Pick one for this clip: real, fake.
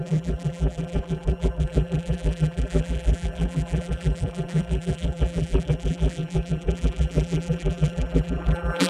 fake